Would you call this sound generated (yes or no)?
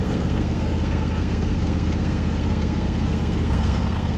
yes